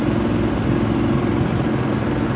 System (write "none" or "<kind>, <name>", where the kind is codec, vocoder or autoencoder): none